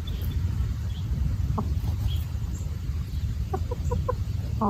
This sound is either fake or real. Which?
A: fake